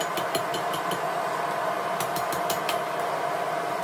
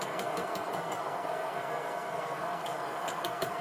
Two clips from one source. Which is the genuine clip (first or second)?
first